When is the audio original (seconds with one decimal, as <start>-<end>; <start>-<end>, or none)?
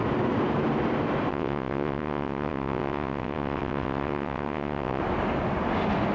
0.0-1.3; 5.0-6.1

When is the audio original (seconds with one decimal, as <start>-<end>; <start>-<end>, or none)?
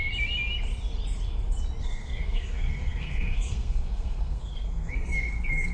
0.0-1.8